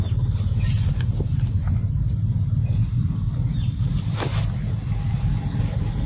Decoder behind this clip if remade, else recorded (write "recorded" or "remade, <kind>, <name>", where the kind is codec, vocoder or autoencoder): recorded